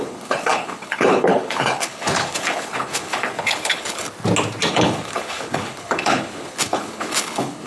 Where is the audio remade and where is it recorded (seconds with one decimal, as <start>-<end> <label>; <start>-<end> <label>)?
0.0-4.1 remade; 4.1-4.7 recorded; 4.7-7.7 remade